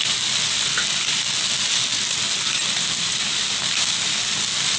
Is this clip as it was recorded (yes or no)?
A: yes